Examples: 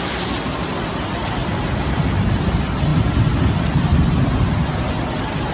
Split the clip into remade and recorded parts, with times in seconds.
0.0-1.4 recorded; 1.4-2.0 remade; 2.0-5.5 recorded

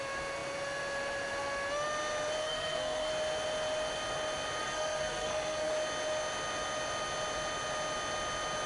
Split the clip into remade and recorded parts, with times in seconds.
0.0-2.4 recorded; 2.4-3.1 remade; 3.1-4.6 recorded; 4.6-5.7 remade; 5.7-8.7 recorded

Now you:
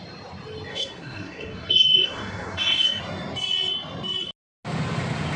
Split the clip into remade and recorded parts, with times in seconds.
0.0-0.7 recorded; 0.7-3.0 remade; 3.0-5.4 recorded